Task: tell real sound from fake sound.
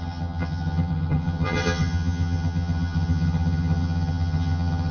fake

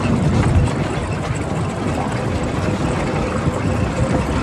real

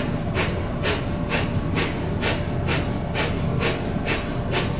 real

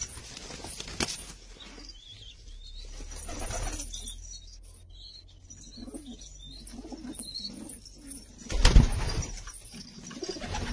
real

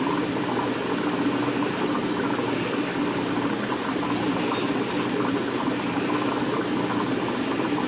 real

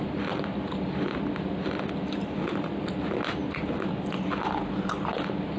real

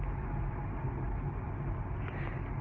real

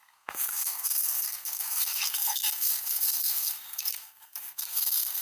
fake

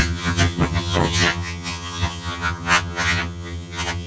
fake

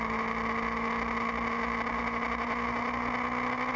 real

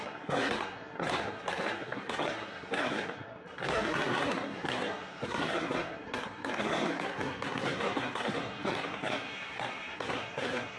fake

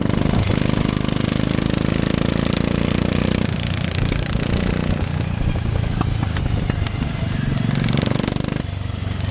real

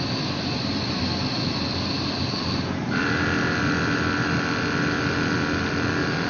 real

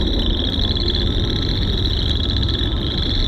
real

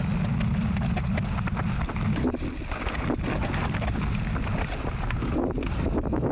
real